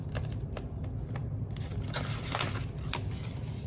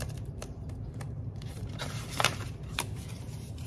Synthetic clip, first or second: second